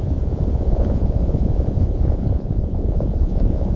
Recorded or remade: remade